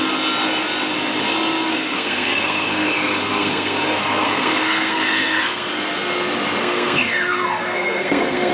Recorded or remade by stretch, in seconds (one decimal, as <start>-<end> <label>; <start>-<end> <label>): 0.0-1.7 recorded; 1.7-5.7 remade; 5.7-6.6 recorded; 6.6-8.5 remade